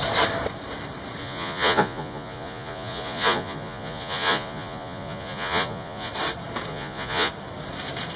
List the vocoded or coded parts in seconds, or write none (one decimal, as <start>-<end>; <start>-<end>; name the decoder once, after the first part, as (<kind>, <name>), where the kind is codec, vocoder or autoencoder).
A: 1.2-6.1 (vocoder, Vocos); 6.7-7.3